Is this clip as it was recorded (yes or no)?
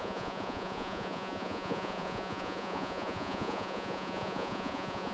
no